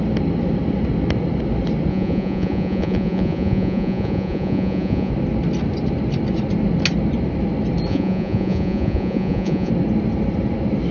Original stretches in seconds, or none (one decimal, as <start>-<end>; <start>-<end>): 0.0-1.9; 5.1-7.9; 9.7-10.9